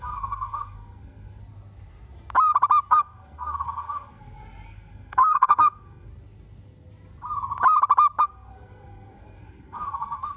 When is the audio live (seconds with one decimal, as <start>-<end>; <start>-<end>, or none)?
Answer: 1.4-2.9; 6.1-8.2